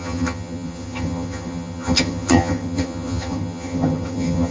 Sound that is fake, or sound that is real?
fake